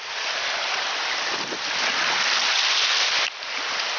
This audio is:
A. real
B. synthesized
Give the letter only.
A